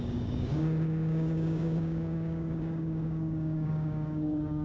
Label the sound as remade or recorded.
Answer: remade